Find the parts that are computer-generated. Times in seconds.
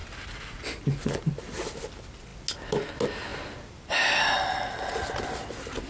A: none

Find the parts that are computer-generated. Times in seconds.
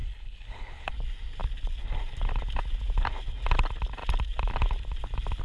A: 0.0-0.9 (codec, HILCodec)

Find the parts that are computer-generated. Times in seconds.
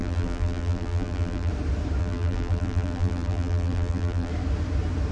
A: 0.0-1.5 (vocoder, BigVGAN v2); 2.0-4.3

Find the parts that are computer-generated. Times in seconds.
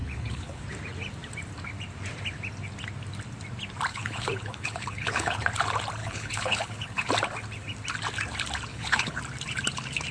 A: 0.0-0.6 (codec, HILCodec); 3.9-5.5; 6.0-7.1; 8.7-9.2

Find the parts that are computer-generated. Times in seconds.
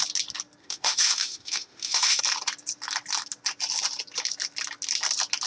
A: 0.6-2.2 (autoencoder, DAC-VAE)